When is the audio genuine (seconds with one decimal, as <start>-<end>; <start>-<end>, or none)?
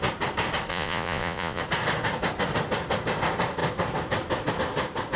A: 0.0-0.7; 1.6-5.2